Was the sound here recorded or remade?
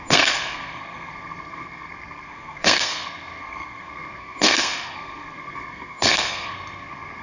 remade